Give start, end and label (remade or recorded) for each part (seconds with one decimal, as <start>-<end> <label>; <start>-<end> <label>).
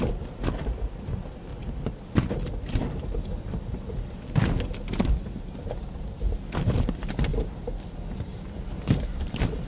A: 0.0-1.5 remade; 1.5-6.0 recorded; 6.0-7.3 remade; 7.3-8.3 recorded; 8.3-9.7 remade